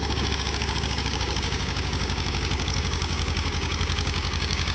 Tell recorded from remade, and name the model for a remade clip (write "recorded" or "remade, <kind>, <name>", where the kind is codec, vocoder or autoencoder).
remade, codec, DAC